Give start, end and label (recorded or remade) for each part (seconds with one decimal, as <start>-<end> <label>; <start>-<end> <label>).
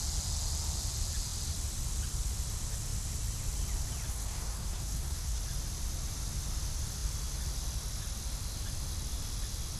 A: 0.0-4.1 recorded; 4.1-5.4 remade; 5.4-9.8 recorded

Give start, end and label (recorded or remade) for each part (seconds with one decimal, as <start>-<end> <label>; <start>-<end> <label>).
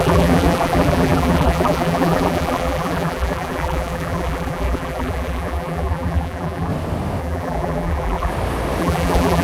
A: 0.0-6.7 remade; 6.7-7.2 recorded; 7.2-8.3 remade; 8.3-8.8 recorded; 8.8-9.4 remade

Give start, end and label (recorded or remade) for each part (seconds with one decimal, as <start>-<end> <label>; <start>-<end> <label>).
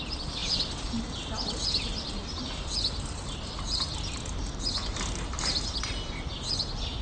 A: 0.0-7.0 recorded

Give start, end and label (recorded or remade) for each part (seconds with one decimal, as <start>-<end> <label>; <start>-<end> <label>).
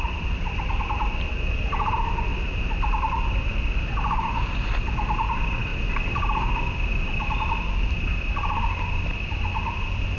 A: 0.0-10.2 recorded